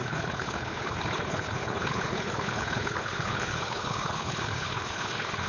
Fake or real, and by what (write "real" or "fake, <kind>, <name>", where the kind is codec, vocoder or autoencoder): fake, codec, HILCodec